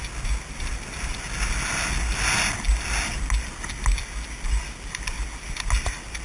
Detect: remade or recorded recorded